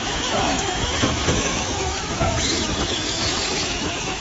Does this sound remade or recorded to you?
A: remade